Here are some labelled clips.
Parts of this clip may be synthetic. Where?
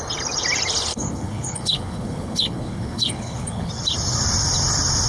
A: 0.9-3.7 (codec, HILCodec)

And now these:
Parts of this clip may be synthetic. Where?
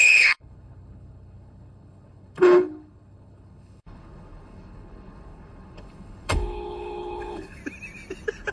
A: 0.0-7.6 (codec, HILCodec)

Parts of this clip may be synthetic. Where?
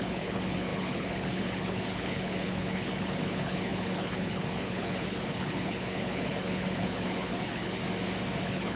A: 0.0-7.8 (codec, HILCodec); 8.4-8.8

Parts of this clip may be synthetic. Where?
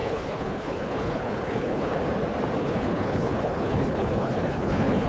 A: 0.0-2.0 (codec, HILCodec); 2.6-5.1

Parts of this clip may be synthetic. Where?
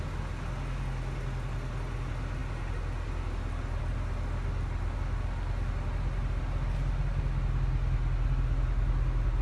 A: none